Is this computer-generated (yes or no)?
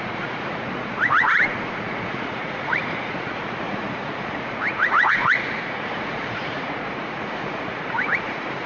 yes